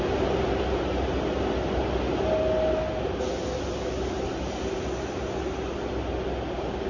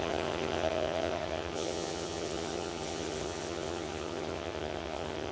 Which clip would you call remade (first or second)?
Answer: second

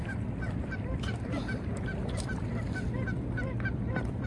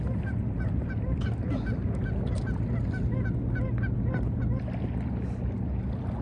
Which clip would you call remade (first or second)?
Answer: first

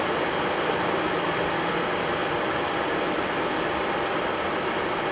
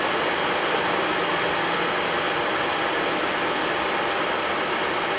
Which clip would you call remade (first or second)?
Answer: first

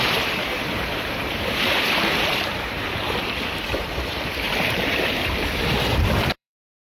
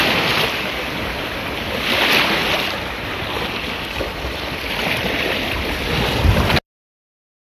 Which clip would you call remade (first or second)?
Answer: first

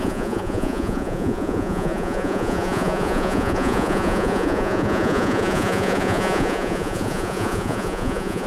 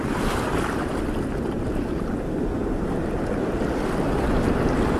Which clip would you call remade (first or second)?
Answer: first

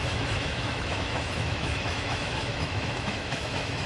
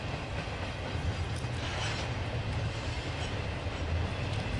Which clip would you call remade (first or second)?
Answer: first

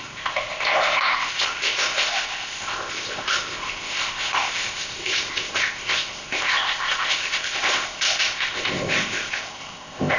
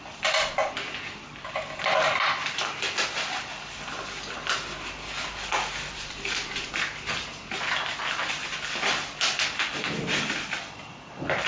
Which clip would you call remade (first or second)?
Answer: first